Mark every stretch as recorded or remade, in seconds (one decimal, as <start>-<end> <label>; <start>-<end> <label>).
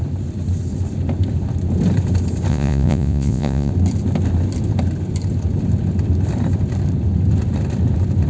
0.0-2.5 recorded; 2.5-3.7 remade; 3.7-8.3 recorded